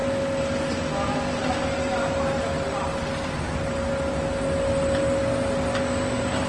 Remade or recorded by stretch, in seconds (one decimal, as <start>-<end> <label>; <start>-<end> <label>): 0.0-6.5 recorded